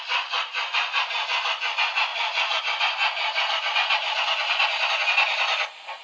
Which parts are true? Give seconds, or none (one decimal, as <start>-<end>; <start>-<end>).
0.0-2.1; 2.6-6.0